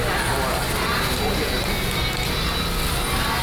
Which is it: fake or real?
real